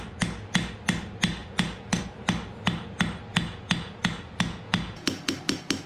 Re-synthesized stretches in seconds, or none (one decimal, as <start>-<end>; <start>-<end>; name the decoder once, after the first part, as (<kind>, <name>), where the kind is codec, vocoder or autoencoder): 1.4-2.0 (vocoder, Vocos); 3.3-5.3